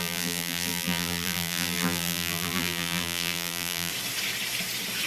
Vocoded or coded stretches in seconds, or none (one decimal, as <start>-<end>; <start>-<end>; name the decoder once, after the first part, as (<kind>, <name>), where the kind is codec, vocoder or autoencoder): 0.0-3.9 (vocoder, BigVGAN v2)